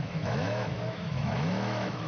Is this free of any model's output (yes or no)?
no